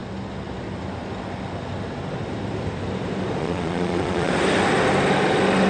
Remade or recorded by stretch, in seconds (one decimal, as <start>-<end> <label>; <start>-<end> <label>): 0.0-3.4 recorded; 3.4-4.3 remade; 4.3-5.7 recorded